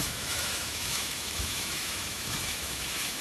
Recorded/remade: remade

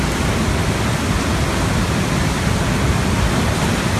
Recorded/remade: recorded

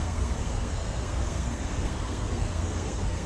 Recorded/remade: remade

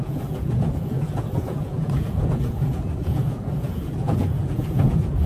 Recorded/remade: remade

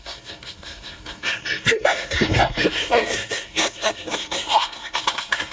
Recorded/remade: remade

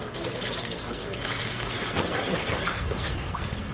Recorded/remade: remade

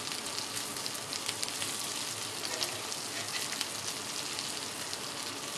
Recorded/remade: recorded